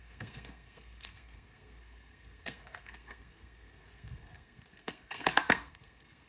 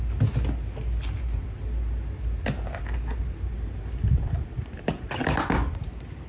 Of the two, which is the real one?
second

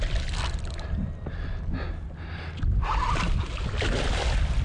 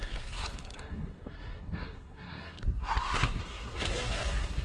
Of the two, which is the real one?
first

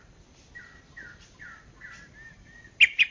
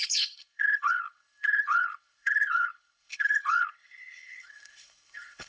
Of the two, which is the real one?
first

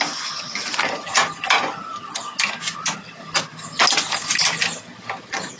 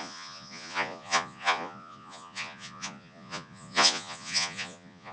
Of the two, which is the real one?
first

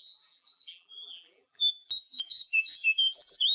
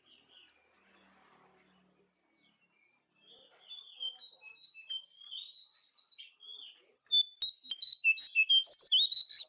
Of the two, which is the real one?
second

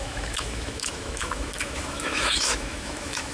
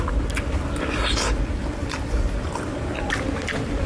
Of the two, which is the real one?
second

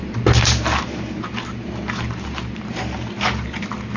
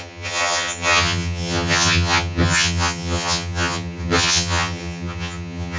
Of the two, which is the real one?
first